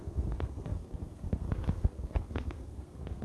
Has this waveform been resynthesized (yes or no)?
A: yes